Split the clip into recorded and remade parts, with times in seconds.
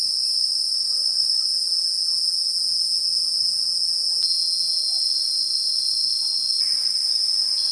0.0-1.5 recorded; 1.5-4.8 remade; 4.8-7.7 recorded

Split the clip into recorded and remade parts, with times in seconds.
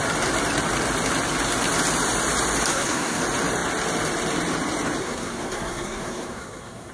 0.0-2.7 recorded; 2.7-3.2 remade; 3.2-5.0 recorded; 5.0-6.9 remade